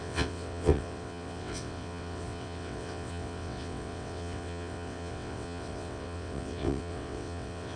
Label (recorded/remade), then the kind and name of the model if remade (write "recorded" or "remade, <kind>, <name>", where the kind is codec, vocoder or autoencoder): remade, vocoder, WaveNeXt